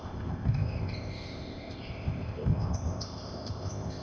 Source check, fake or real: fake